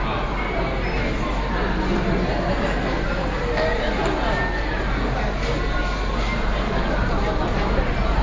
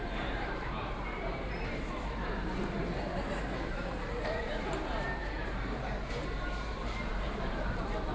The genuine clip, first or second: first